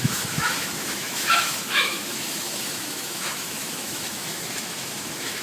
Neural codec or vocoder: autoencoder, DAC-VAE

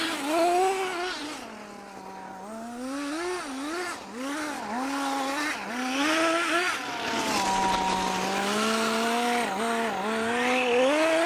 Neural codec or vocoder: none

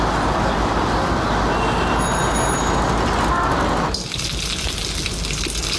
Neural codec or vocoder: none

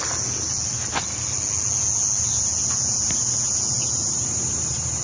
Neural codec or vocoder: none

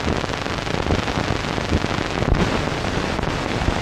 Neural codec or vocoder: none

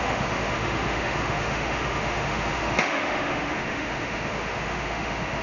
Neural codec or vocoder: autoencoder, DAC-VAE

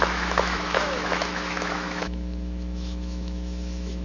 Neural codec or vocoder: autoencoder, DAC-VAE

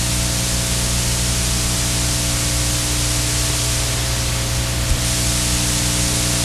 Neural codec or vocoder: none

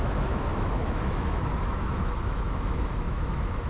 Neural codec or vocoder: autoencoder, DAC-VAE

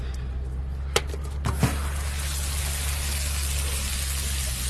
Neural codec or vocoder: none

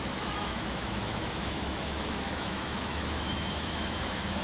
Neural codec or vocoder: autoencoder, DAC-VAE